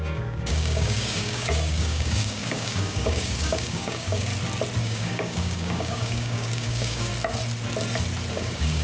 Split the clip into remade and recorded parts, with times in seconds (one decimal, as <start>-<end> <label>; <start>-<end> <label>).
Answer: 0.0-4.3 remade; 4.3-4.8 recorded; 4.8-7.1 remade; 7.1-8.3 recorded; 8.3-8.8 remade